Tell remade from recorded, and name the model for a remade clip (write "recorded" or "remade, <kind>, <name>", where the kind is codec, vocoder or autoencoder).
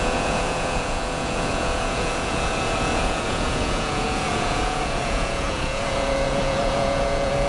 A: remade, vocoder, Vocos